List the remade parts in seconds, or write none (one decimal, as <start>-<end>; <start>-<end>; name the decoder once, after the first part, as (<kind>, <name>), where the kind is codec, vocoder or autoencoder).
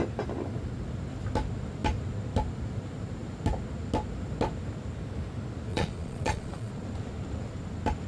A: 5.7-6.7 (vocoder, Vocos)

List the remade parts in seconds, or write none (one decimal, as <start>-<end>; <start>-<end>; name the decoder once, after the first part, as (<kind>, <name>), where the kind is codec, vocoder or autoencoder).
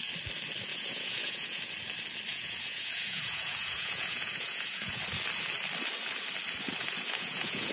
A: 0.7-1.6 (vocoder, Vocos); 2.3-5.0; 6.8-7.7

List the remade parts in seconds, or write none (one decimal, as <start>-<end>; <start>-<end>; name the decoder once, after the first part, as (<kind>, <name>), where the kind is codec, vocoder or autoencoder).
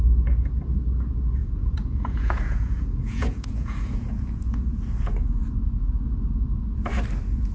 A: 1.4-4.8 (vocoder, Vocos)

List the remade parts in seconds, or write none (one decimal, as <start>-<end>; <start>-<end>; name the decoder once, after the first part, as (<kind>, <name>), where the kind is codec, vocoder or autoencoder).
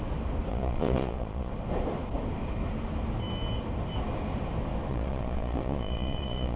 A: 0.5-1.5 (vocoder, Vocos); 4.9-6.6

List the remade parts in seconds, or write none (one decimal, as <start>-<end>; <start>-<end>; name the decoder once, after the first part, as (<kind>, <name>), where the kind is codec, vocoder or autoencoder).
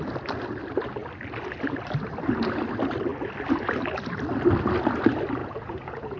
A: 5.4-6.2 (vocoder, Vocos)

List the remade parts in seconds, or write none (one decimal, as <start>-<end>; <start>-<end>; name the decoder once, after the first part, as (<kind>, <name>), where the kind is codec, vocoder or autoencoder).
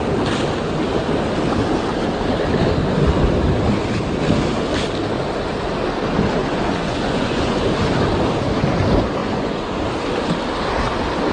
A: 6.4-7.6 (vocoder, Vocos); 9.2-9.8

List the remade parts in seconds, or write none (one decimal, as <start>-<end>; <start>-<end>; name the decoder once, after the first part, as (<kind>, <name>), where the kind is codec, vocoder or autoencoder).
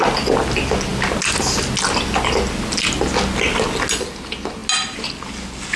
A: none